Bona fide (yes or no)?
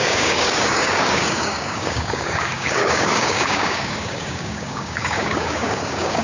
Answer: no